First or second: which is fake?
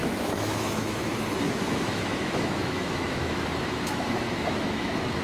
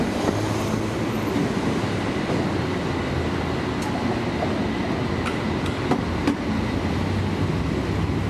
first